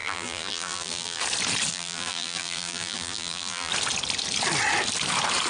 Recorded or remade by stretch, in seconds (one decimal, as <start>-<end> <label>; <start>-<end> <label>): 0.0-1.2 remade; 1.2-1.7 recorded; 1.7-3.7 remade; 3.7-5.5 recorded